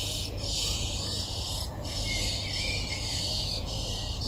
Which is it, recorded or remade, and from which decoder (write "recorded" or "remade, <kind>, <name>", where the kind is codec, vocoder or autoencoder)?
remade, vocoder, Vocos